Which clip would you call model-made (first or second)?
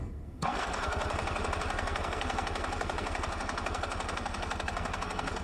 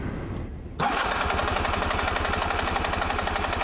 first